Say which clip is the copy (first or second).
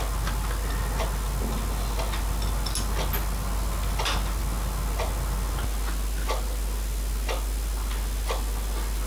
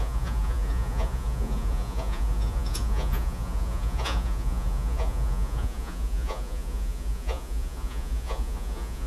second